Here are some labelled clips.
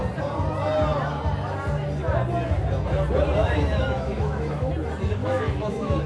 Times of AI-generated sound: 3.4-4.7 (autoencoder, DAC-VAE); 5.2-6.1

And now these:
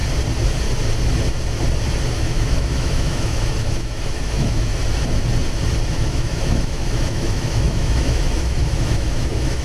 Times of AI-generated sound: 2.2-4.7 (autoencoder, DAC-VAE); 5.9-9.6

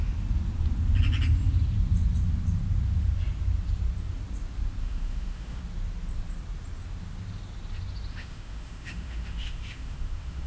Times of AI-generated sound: 4.8-5.6 (autoencoder, DAC-VAE); 8.1-10.5

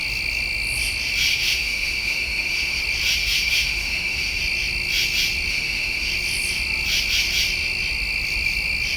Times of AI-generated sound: 1.3-2.8 (autoencoder, DAC-VAE); 3.2-4.4; 5.5-6.1

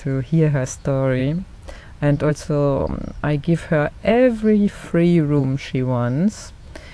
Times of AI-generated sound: 0.0-1.2 (autoencoder, DAC-VAE); 2.3-2.8; 4.1-4.8; 5.4-6.9

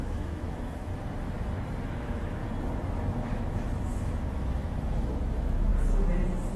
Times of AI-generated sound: 0.0-0.9 (autoencoder, DAC-VAE); 1.8-2.4; 3.1-5.7